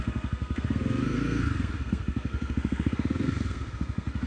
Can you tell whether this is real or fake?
fake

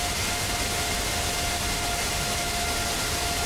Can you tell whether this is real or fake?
real